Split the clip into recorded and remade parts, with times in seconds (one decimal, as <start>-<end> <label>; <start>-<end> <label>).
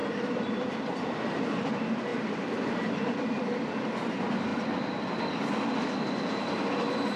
0.0-1.7 remade; 1.7-2.1 recorded; 2.1-4.1 remade; 4.1-4.5 recorded; 4.5-5.8 remade; 5.8-7.2 recorded